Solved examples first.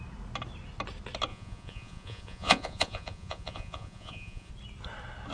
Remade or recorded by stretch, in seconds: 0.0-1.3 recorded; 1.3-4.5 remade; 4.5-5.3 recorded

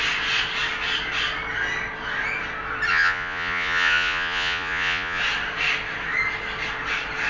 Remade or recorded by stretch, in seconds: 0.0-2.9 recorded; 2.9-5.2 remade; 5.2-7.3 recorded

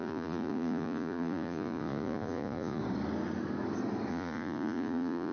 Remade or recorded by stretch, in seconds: 0.0-2.8 remade; 2.8-4.1 recorded; 4.1-5.3 remade

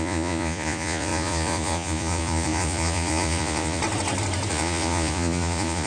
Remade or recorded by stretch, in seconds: 0.0-3.8 remade; 3.8-4.5 recorded; 4.5-5.9 remade

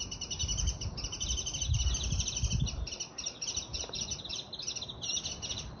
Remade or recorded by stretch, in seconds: 0.0-3.7 recorded; 3.7-4.2 remade; 4.2-5.8 recorded

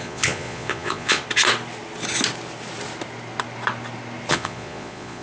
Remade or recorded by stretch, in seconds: 0.0-1.2 remade; 1.2-4.3 recorded; 4.3-5.2 remade